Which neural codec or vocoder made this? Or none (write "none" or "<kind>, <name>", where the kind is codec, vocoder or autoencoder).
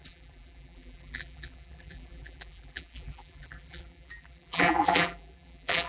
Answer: vocoder, BigVGAN v2